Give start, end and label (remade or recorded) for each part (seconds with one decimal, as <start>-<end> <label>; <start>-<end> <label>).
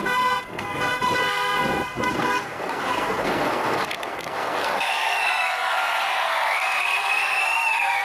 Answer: 0.0-8.0 remade